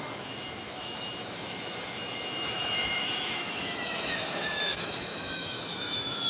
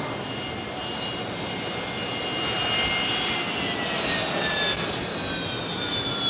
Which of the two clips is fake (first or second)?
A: first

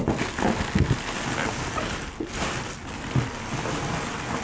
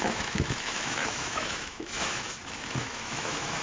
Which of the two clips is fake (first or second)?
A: second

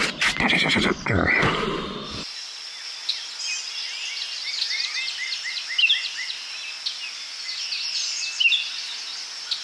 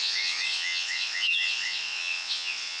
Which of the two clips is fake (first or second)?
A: second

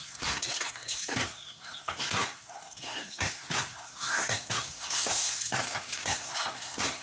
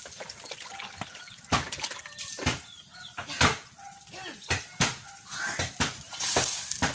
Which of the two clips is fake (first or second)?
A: first